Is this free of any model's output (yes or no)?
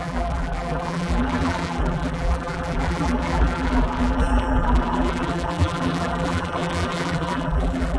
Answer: no